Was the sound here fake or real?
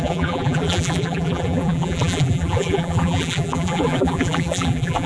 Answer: fake